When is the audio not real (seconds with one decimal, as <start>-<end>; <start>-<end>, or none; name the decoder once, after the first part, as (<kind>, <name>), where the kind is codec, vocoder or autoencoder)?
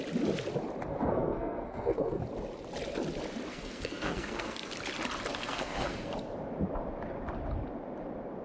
0.9-2.2 (codec, SNAC); 3.5-4.7; 5.3-6.1